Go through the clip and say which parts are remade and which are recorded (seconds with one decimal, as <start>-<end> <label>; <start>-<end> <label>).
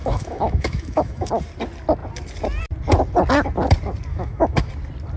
0.0-1.3 remade; 1.3-4.1 recorded; 4.1-4.7 remade; 4.7-5.2 recorded